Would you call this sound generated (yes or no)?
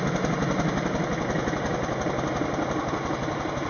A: no